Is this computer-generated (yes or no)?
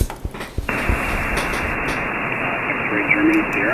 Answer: no